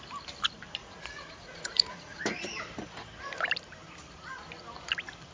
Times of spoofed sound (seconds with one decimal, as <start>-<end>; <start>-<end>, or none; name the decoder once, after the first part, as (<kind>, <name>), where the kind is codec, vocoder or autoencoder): 0.8-2.2 (vocoder, Vocos)

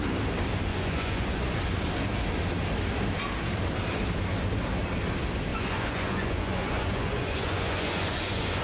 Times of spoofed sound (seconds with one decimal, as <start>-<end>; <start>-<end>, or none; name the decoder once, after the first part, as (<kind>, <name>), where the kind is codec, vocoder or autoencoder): 0.7-1.6 (vocoder, Vocos); 5.5-8.6

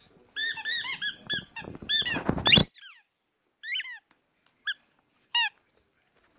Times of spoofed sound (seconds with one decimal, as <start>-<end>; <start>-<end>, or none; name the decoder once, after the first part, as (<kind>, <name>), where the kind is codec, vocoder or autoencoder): none

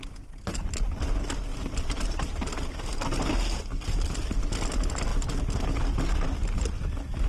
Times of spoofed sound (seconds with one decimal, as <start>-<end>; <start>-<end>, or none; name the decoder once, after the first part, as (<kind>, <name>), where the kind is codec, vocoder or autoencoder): 1.5-2.5 (vocoder, BigVGAN v2)

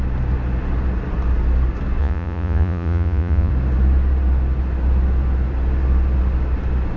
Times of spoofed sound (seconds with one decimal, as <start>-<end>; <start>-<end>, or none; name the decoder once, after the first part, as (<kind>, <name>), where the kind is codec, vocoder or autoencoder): 2.0-3.5 (vocoder, Vocos)

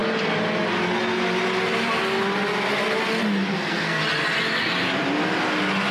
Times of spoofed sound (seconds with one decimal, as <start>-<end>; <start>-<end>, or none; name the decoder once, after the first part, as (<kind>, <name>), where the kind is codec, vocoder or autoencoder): 3.5-4.0 (codec, SNAC)